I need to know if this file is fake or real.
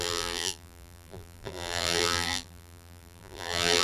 fake